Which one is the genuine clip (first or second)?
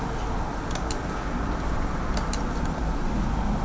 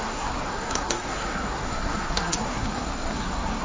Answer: first